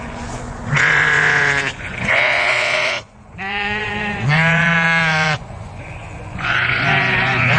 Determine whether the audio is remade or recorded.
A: remade